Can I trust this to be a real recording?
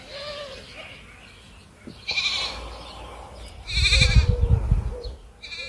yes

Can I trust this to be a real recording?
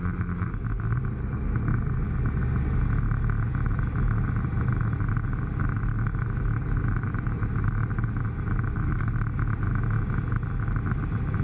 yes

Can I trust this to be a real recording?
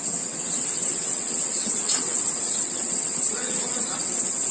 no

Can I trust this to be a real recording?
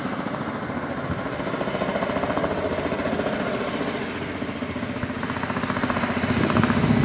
yes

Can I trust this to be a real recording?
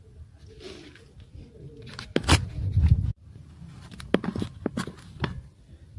yes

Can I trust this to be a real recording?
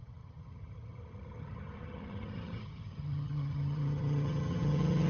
no